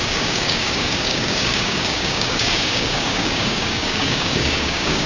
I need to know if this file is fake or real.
fake